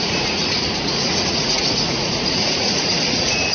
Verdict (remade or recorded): remade